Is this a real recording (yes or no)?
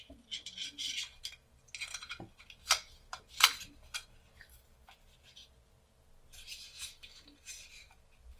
yes